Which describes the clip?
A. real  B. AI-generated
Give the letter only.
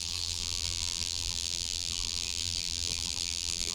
B